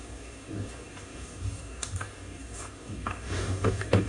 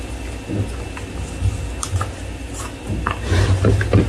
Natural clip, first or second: second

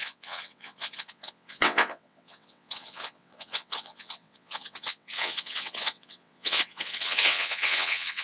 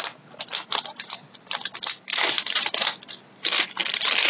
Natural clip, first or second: second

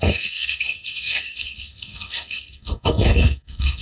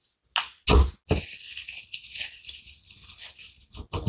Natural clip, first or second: second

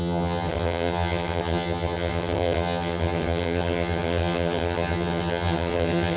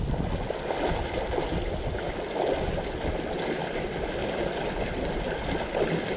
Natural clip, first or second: second